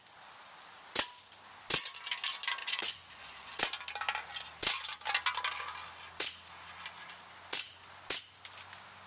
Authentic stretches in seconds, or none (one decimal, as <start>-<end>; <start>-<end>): 0.0-2.6; 3.5-9.1